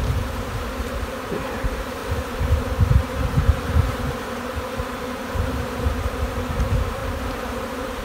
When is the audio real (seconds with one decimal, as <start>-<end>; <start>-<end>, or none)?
none